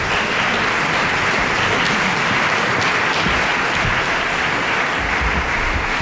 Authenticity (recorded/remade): recorded